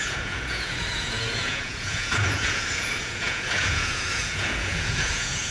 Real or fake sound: fake